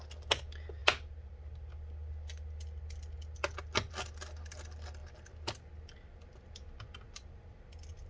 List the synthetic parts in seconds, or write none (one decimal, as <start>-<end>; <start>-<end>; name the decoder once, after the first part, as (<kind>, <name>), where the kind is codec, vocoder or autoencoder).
none